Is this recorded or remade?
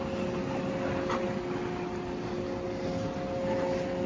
recorded